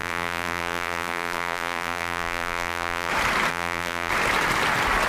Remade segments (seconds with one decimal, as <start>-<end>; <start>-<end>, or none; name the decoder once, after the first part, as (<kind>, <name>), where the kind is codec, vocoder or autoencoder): 0.0-3.1 (vocoder, BigVGAN v2); 3.5-4.1